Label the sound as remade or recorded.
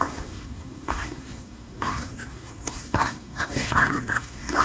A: remade